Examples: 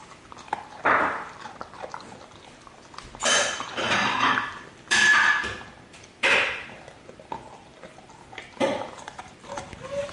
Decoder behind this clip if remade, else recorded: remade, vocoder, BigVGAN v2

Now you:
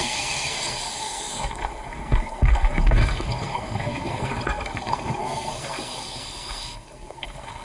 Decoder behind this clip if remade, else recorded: remade, codec, SNAC